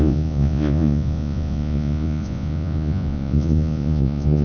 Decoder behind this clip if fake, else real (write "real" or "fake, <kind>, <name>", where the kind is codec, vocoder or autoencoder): fake, vocoder, Vocos